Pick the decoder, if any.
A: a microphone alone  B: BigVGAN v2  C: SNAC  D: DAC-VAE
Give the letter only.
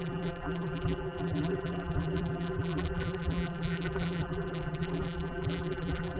B